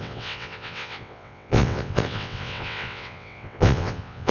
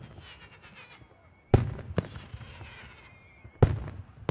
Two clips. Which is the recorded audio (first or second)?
second